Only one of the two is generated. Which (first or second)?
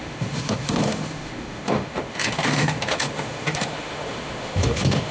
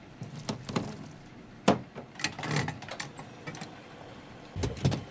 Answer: first